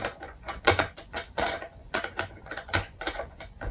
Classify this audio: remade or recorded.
remade